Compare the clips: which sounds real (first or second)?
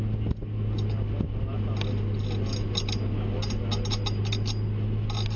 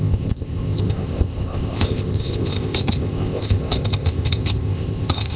first